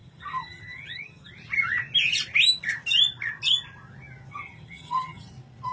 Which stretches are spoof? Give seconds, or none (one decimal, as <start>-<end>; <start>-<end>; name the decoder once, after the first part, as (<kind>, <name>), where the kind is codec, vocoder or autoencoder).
0.0-1.3 (vocoder, HiFi-GAN); 4.3-5.3